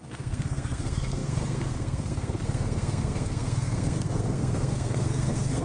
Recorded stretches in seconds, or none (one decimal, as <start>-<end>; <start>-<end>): none